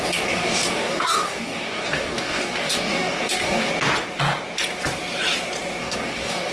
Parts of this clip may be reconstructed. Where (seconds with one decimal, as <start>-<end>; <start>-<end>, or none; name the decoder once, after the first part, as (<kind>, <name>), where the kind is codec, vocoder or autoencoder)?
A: 0.0-3.7 (codec, DAC); 5.8-6.5